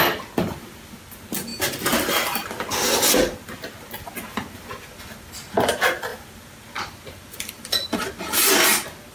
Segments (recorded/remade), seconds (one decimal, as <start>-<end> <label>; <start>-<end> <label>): 0.0-9.1 recorded